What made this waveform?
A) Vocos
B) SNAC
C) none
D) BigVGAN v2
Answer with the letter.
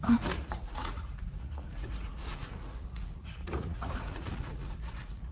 A